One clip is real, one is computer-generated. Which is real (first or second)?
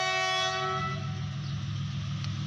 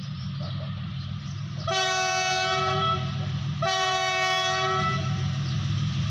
first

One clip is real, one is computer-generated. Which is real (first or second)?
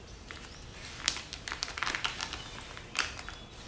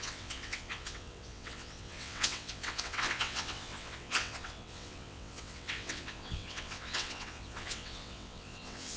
first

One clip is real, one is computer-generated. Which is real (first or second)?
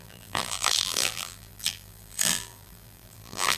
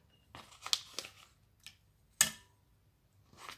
second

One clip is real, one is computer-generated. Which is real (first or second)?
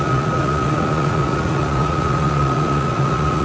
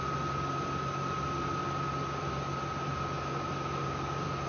second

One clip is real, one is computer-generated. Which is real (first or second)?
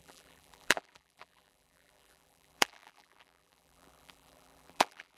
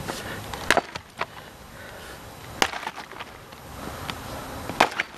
second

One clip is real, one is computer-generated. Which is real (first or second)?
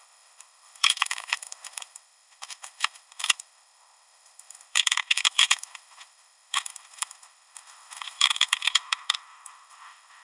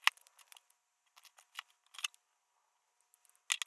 second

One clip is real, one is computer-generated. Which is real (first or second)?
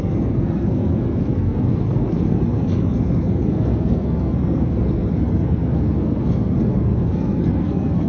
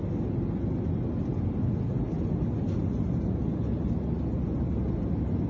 second